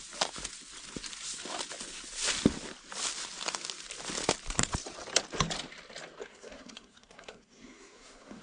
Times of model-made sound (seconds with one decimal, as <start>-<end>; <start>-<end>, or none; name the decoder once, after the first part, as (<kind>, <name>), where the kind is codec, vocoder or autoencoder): 6.2-8.4 (codec, SNAC)